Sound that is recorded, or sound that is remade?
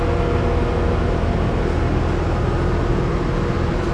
recorded